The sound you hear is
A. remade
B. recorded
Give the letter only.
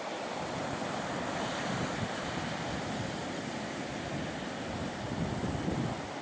B